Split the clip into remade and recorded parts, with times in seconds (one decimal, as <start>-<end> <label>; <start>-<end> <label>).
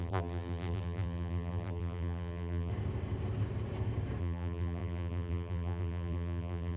0.0-2.7 remade; 2.7-4.2 recorded; 4.2-6.8 remade